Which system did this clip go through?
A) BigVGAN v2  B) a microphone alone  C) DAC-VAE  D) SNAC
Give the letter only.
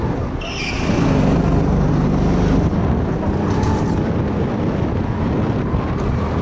B